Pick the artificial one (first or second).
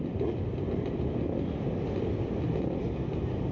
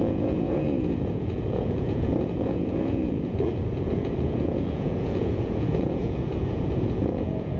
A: second